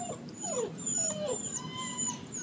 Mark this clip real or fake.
fake